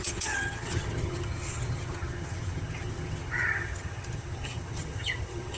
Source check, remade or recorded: remade